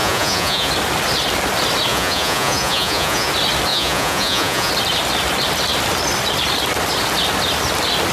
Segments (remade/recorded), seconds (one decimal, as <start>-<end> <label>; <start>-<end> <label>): 0.0-0.7 remade; 0.7-1.9 recorded; 1.9-3.3 remade; 3.3-3.7 recorded; 3.7-4.7 remade; 4.7-8.1 recorded